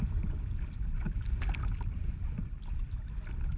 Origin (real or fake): real